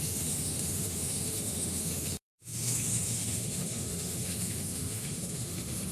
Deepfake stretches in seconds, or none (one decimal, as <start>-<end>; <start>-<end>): 0.0-5.9